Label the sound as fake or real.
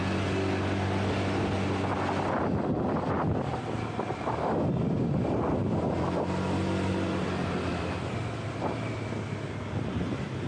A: real